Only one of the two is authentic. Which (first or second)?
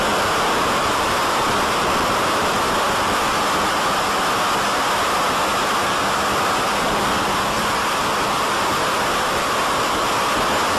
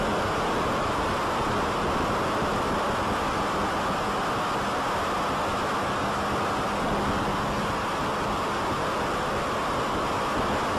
second